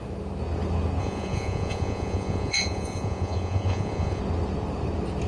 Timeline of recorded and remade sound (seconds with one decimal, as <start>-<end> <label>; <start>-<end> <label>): 0.0-1.0 recorded; 1.0-4.2 remade; 4.2-5.3 recorded